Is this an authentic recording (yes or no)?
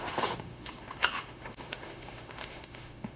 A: no